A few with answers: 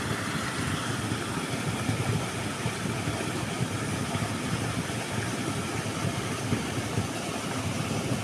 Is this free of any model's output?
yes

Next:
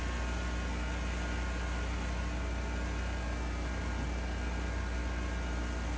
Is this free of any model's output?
yes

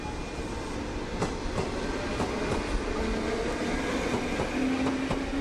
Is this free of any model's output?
yes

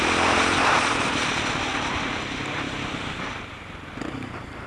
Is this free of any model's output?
no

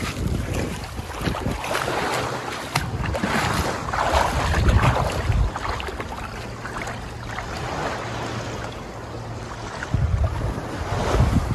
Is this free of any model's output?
yes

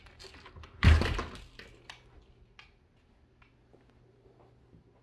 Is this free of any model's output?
yes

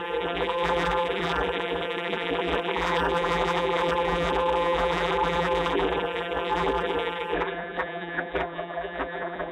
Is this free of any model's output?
no